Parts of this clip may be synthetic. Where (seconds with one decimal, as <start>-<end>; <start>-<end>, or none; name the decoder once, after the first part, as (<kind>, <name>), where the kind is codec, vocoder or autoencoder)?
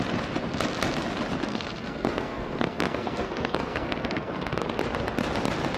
1.5-4.6 (codec, SNAC)